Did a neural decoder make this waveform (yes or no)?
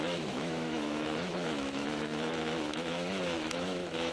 yes